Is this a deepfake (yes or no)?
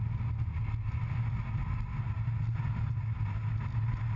no